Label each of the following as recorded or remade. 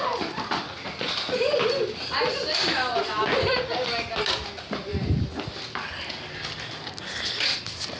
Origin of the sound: recorded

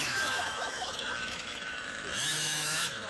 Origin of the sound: remade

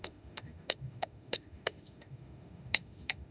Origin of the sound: remade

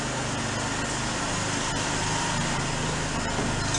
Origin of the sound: recorded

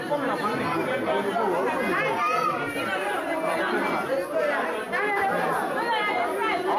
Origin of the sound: recorded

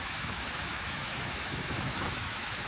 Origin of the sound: remade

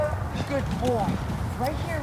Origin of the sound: recorded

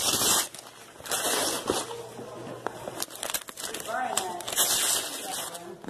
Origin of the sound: recorded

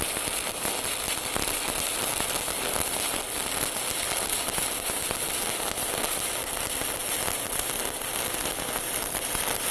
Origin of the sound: recorded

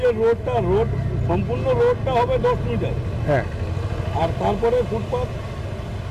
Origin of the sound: recorded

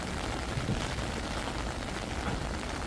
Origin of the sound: recorded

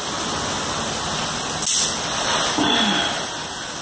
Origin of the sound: recorded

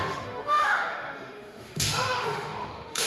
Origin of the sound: remade